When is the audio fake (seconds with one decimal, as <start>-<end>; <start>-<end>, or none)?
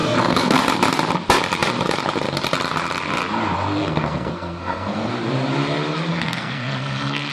0.0-0.6; 3.8-5.1; 6.1-7.3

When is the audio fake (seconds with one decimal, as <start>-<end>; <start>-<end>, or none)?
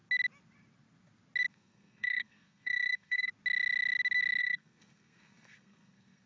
1.5-3.3; 4.4-6.3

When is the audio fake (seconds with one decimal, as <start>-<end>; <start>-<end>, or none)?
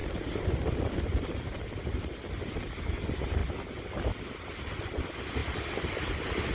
none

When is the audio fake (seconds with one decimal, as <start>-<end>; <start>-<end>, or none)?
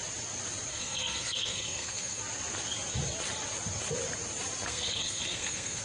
0.7-2.2; 4.7-5.8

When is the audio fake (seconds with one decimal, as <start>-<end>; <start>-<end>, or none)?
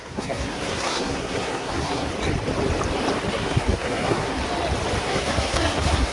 0.0-2.1; 3.3-4.4; 5.0-6.1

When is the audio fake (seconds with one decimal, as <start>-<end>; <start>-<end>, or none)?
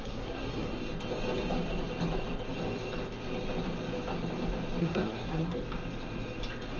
0.0-0.7; 4.8-5.6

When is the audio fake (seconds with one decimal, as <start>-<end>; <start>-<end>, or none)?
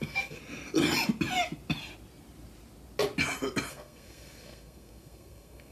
0.0-0.4; 3.7-5.7